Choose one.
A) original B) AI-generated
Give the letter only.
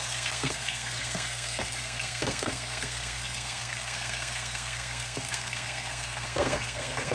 B